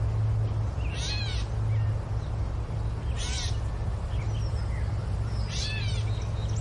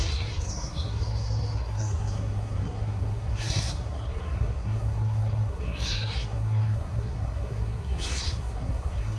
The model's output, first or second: second